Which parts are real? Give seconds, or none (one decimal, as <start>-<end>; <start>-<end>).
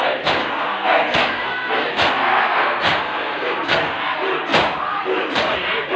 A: 0.0-0.4; 4.0-6.0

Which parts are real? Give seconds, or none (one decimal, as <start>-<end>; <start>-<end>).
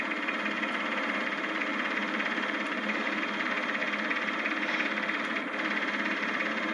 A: 0.0-1.7; 3.2-6.7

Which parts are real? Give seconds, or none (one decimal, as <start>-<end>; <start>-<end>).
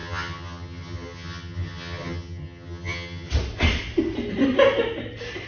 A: 3.3-5.5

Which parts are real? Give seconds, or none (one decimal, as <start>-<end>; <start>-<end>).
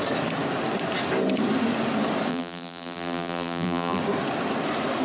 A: 0.0-2.3; 4.0-5.0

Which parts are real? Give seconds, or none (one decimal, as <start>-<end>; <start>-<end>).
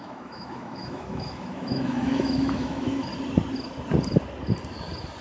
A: 3.1-5.2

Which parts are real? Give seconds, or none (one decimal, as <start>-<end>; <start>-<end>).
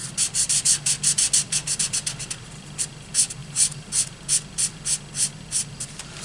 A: 0.0-3.4; 3.9-6.2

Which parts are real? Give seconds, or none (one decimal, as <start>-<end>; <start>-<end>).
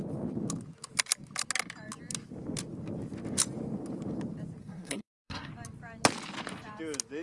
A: 0.0-4.6; 5.5-7.2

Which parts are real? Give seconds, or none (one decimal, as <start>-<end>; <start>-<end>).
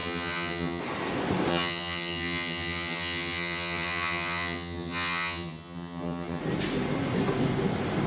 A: 0.8-1.5; 6.4-8.1